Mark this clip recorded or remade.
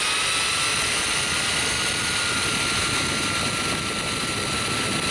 recorded